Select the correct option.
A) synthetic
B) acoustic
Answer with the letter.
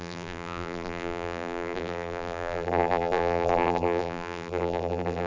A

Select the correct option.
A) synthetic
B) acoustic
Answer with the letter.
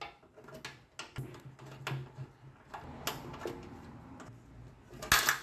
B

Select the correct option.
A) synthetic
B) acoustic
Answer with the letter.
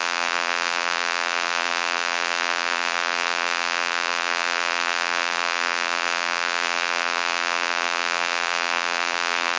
A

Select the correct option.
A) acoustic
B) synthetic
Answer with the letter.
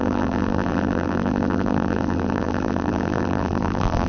B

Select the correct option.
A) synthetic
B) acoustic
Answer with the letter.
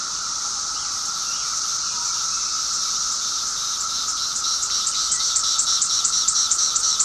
A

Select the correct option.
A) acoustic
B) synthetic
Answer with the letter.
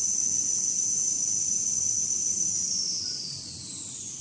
A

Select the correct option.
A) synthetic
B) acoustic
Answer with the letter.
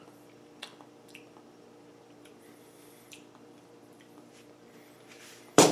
A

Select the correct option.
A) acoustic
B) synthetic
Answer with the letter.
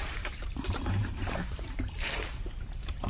B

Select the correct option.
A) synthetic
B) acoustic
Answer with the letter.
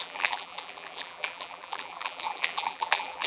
A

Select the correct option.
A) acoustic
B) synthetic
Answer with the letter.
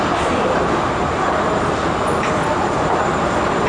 B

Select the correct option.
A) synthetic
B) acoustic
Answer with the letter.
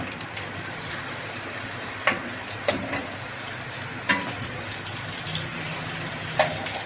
B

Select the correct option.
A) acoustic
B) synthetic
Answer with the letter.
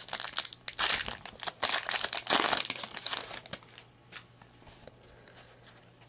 A